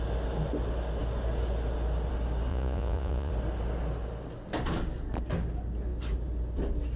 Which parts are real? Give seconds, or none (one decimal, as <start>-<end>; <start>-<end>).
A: 0.0-2.5; 3.3-7.0